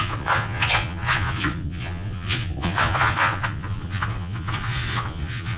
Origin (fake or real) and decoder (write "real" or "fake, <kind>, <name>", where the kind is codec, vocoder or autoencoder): fake, vocoder, Vocos